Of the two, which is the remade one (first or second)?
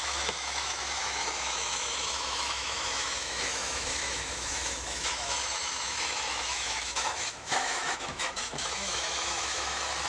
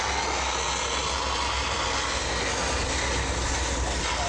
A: first